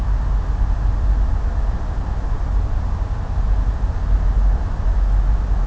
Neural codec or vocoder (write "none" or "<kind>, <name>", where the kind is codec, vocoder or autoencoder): none